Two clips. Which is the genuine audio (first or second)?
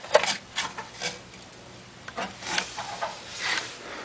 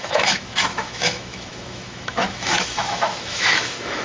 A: first